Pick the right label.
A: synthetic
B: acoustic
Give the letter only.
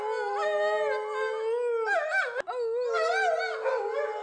B